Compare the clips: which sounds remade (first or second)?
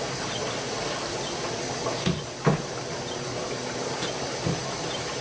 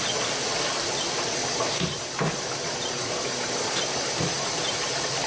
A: second